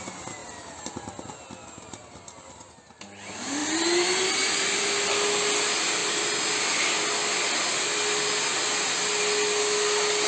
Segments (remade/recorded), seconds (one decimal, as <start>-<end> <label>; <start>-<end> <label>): 0.0-3.6 recorded; 3.6-5.1 remade; 5.1-10.3 recorded